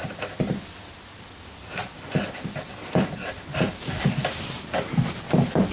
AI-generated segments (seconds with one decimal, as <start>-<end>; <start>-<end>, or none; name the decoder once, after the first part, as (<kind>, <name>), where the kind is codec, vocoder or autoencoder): none